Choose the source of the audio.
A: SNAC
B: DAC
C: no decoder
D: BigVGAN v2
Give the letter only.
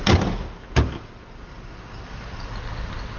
C